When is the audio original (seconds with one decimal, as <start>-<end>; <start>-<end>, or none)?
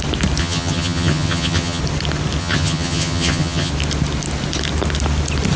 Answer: 0.0-0.4; 1.8-2.4; 3.7-5.6